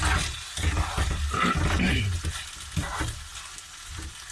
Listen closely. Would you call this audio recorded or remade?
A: recorded